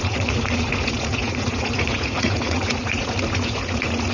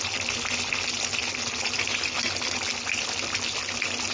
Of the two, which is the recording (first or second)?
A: second